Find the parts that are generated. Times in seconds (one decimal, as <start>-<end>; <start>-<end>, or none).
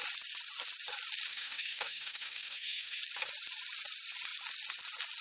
1.3-3.0